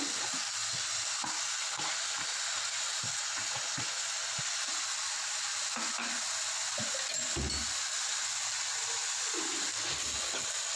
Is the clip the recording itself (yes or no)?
yes